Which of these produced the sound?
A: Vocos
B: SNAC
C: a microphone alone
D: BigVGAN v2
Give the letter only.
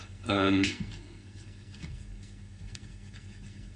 B